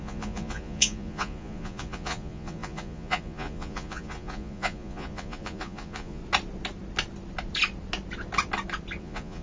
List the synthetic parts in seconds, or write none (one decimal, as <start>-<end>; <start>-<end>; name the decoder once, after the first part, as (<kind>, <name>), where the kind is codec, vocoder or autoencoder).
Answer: 0.0-6.2 (vocoder, Vocos); 9.0-9.4